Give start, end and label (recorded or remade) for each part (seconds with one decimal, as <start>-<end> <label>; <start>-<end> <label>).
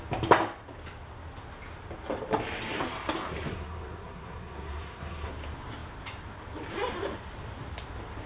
0.0-3.5 recorded; 3.5-5.3 remade; 5.3-8.3 recorded